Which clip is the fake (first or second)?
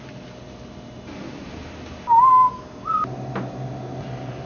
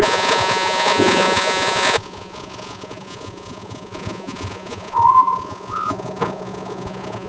second